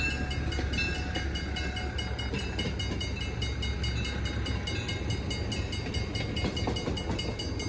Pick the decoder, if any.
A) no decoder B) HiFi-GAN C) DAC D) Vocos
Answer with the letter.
A